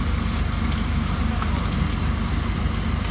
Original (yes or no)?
yes